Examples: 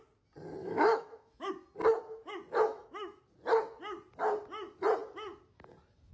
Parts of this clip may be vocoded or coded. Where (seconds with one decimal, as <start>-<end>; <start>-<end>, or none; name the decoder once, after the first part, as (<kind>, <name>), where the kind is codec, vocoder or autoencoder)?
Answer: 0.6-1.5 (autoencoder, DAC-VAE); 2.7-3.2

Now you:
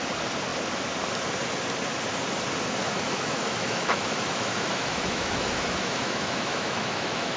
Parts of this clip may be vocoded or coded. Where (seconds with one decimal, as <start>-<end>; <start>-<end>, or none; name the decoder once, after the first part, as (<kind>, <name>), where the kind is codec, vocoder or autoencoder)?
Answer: 2.8-7.4 (autoencoder, DAC-VAE)

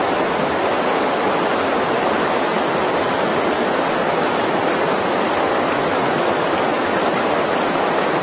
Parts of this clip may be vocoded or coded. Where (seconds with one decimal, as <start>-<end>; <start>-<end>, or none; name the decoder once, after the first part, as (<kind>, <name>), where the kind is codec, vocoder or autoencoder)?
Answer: none

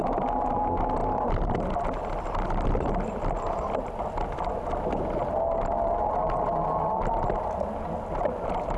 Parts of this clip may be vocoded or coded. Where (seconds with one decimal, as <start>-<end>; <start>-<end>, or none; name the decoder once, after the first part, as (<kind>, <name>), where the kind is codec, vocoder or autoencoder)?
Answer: none

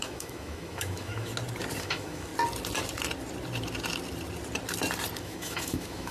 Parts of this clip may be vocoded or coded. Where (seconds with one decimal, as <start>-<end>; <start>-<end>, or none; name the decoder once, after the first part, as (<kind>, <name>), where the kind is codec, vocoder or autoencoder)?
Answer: 0.0-1.3 (autoencoder, DAC-VAE); 1.8-2.3; 5.2-6.1

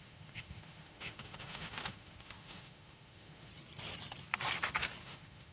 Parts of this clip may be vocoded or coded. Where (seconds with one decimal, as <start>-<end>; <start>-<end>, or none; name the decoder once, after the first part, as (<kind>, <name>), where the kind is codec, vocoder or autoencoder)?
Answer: 0.0-3.5 (autoencoder, DAC-VAE); 5.0-5.5

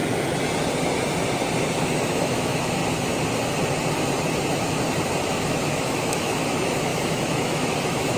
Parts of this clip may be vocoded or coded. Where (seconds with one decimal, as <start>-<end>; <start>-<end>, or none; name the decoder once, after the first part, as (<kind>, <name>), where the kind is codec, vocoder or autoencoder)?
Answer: 1.7-2.8 (autoencoder, DAC-VAE); 5.3-8.2

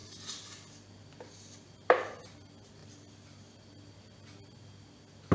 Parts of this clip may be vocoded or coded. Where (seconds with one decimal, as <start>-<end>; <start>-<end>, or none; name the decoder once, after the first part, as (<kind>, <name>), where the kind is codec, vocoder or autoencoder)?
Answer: none